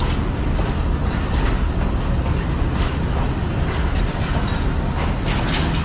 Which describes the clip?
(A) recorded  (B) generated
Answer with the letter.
A